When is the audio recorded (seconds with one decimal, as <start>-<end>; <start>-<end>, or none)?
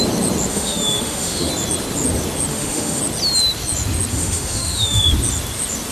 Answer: 0.0-0.5; 1.5-2.5; 3.0-4.1; 5.1-5.9